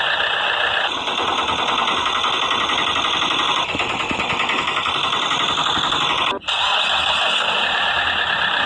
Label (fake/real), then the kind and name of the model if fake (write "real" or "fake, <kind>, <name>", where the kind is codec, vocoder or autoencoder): real